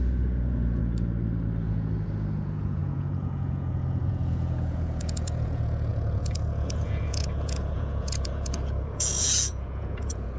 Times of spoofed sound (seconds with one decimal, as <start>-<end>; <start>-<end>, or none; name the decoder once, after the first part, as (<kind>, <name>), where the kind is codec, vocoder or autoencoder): 0.0-0.8 (vocoder, Vocos); 1.6-10.4